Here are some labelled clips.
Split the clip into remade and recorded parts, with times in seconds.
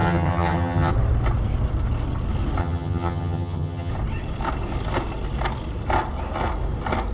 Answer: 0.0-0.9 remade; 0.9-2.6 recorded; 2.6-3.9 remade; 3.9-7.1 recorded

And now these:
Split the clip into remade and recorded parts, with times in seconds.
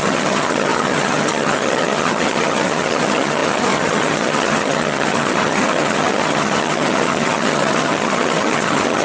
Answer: 0.0-9.0 remade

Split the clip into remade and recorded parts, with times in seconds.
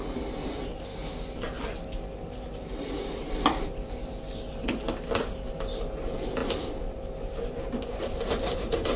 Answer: 0.0-9.0 recorded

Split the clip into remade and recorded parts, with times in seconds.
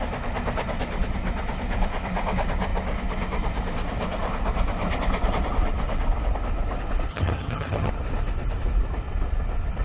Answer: 0.0-7.1 recorded; 7.1-7.9 remade; 7.9-9.8 recorded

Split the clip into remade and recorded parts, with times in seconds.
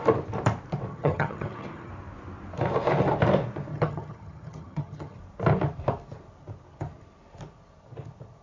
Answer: 0.0-0.9 recorded; 0.9-1.9 remade; 1.9-3.7 recorded; 3.7-5.2 remade; 5.2-8.4 recorded